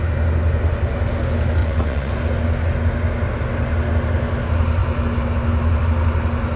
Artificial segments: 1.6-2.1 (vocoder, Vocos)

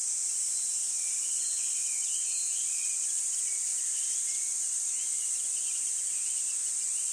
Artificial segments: 1.8-2.6 (vocoder, Vocos)

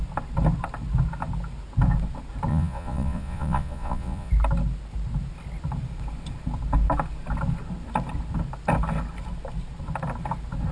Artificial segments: 2.5-4.3 (vocoder, Vocos)

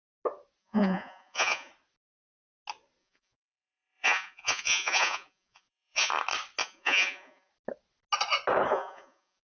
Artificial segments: 0.6-1.7 (vocoder, Vocos); 3.0-6.1; 6.6-7.5; 8.7-9.5

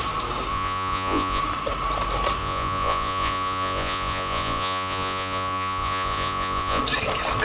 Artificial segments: 0.5-1.4 (vocoder, Vocos); 2.4-6.8

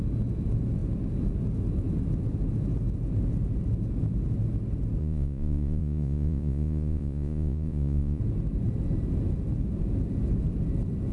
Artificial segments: 5.0-8.2 (vocoder, Vocos)

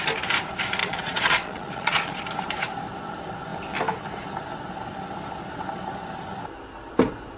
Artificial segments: 0.8-2.2 (vocoder, Vocos)

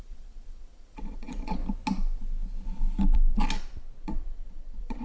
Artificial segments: 0.0-1.6 (vocoder, Vocos); 4.0-5.0